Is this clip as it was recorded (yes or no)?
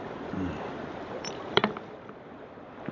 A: no